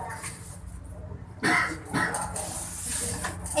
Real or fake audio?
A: real